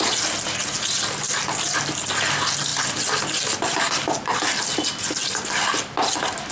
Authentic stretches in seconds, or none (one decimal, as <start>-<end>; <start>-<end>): 0.0-6.5